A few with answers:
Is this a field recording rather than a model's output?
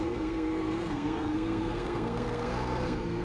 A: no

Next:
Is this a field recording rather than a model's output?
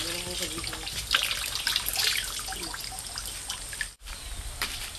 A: yes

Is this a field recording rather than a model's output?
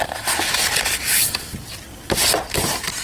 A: yes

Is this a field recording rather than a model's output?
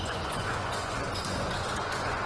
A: no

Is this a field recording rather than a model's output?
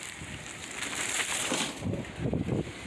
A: yes